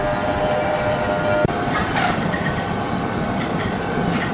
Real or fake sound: real